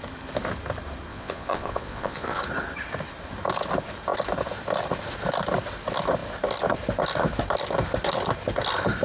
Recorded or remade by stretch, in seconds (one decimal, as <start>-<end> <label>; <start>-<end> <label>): 0.0-1.1 recorded; 1.1-2.4 remade; 2.4-9.0 recorded